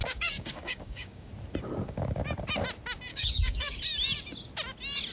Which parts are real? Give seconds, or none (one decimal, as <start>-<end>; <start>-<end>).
1.3-3.1; 3.8-5.1